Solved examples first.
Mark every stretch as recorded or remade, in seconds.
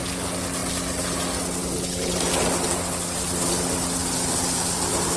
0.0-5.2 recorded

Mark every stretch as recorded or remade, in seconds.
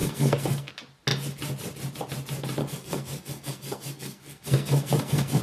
0.0-0.7 remade; 0.7-2.6 recorded; 2.6-5.4 remade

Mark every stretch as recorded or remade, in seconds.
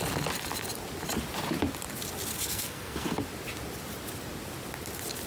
0.0-2.3 recorded; 2.3-3.2 remade; 3.2-5.3 recorded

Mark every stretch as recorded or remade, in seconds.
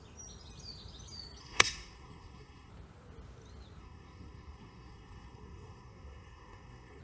0.0-1.4 recorded; 1.4-2.7 remade; 2.7-3.8 recorded; 3.8-7.0 remade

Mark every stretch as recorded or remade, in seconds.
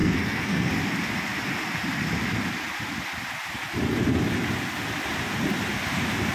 0.0-0.7 remade; 0.7-6.3 recorded